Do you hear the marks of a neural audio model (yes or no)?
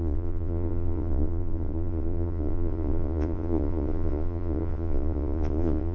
yes